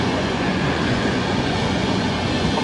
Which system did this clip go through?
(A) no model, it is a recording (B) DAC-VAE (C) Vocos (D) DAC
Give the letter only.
C